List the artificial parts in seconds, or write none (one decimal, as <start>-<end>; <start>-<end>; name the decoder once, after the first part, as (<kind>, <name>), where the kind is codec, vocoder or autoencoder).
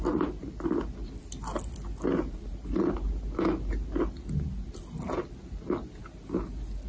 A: none